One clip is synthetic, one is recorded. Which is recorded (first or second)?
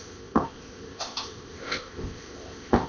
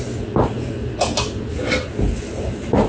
second